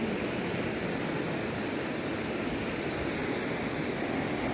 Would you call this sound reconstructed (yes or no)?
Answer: no